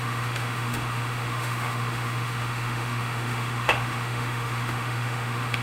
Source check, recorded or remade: remade